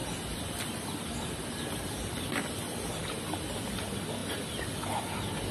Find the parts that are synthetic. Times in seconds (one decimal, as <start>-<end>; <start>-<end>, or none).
none